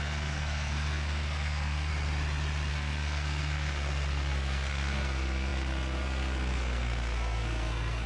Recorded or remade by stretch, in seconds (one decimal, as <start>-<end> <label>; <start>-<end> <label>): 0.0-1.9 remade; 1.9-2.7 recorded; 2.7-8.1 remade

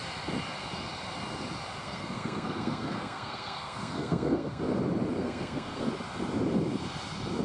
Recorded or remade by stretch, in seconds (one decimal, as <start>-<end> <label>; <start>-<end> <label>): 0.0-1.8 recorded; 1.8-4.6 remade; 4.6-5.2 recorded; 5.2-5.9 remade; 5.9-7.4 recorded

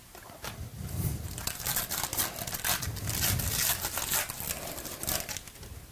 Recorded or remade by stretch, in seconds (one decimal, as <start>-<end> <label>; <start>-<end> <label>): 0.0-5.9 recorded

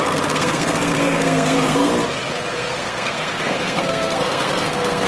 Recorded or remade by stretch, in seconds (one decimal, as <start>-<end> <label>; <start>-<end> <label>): 0.0-1.9 remade; 1.9-2.5 recorded; 2.5-5.1 remade

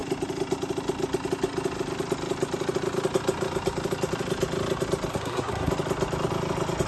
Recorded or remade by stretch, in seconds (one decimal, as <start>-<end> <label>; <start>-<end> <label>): 0.0-5.1 recorded; 5.1-5.7 remade; 5.7-6.9 recorded